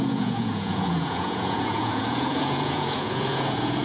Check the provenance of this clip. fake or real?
fake